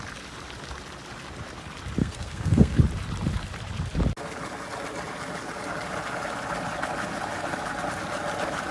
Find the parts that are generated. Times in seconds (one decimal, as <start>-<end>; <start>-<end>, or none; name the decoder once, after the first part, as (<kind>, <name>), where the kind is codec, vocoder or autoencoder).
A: 2.0-2.8 (codec, SNAC)